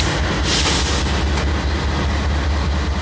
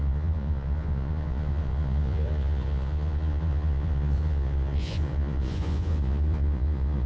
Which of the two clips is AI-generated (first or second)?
second